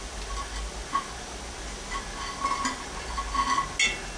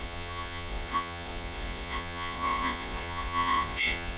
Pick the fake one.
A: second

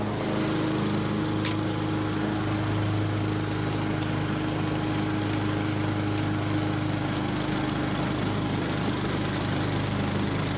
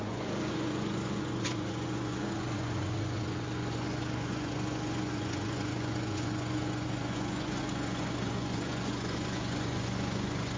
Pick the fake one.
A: second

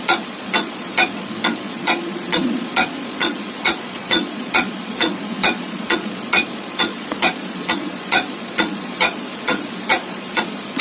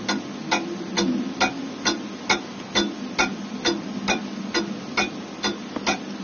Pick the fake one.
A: first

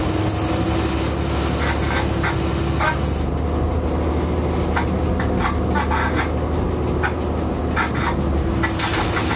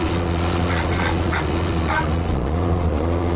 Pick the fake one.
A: second